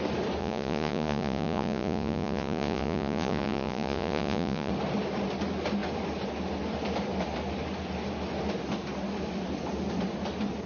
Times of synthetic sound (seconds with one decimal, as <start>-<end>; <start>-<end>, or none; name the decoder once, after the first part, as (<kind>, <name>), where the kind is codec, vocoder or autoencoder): 0.4-4.7 (vocoder, Vocos)